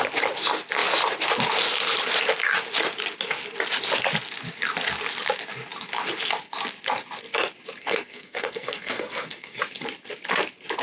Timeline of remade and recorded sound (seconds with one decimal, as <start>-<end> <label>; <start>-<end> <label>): 0.0-7.8 recorded; 7.8-9.6 remade; 9.6-10.8 recorded